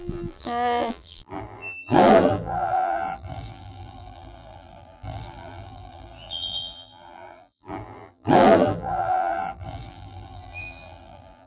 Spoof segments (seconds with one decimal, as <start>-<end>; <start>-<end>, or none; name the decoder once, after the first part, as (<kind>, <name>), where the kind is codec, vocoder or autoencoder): 0.0-11.5 (vocoder, BigVGAN v2)

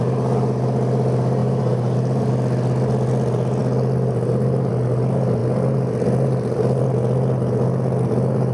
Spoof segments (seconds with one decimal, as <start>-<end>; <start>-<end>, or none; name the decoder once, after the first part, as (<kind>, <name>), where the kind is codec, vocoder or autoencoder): 1.4-2.3 (vocoder, BigVGAN v2)

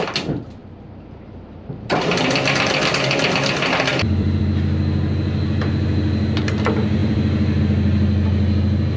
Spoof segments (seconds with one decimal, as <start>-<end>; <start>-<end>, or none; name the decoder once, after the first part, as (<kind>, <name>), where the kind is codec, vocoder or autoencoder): 0.6-4.4 (vocoder, BigVGAN v2); 7.0-7.6

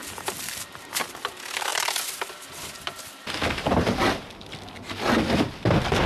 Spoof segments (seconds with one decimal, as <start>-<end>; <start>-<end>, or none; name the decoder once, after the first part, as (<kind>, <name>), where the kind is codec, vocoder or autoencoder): 0.0-0.8 (vocoder, BigVGAN v2); 1.7-4.4

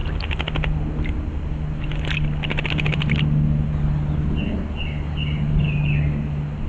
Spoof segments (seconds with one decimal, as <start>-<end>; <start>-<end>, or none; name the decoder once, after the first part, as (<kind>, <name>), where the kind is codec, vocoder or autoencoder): none

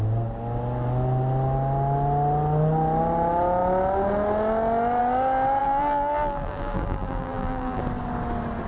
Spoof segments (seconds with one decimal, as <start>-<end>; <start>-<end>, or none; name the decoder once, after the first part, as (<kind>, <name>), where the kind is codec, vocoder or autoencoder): 5.6-7.8 (vocoder, BigVGAN v2)